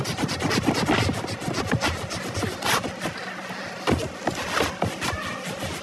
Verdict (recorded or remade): recorded